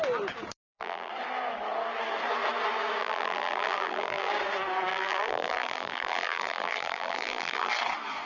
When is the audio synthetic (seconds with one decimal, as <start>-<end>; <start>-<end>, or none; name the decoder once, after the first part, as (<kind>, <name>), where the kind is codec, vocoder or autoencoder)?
0.6-1.1 (vocoder, BigVGAN v2); 3.0-4.3; 4.9-7.7